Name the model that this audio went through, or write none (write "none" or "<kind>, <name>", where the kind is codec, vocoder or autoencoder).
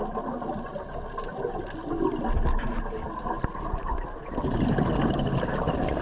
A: none